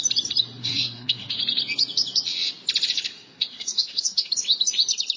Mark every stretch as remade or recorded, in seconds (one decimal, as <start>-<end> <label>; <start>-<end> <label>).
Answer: 0.0-0.6 recorded; 0.6-1.4 remade; 1.4-3.1 recorded; 3.1-4.3 remade; 4.3-5.2 recorded